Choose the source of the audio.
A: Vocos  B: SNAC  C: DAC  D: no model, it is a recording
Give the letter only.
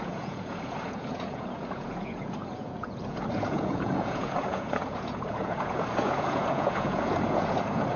A